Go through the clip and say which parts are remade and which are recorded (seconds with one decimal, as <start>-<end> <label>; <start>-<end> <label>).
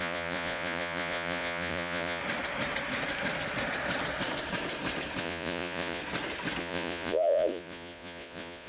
0.0-2.2 remade; 2.2-5.2 recorded; 5.2-6.0 remade; 6.0-6.6 recorded; 6.6-8.7 remade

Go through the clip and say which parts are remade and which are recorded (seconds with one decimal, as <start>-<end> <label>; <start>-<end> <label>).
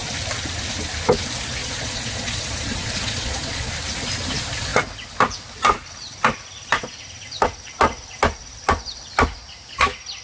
0.0-1.6 recorded; 1.6-3.7 remade; 3.7-10.2 recorded